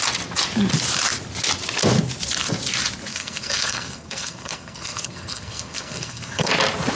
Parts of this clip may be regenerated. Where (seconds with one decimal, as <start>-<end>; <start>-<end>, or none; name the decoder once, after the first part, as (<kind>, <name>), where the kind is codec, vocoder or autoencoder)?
3.1-6.5 (codec, SNAC)